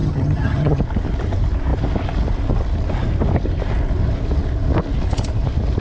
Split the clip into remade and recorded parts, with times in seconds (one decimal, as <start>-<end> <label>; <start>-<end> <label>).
0.0-0.8 remade; 0.8-5.8 recorded